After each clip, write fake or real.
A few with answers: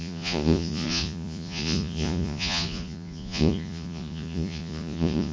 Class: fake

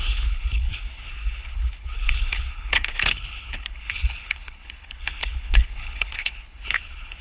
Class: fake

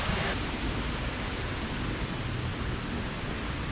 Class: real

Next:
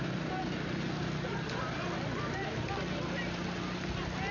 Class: real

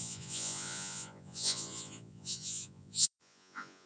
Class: fake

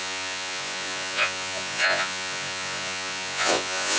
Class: fake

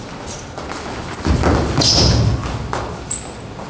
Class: real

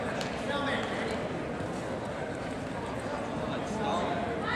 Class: real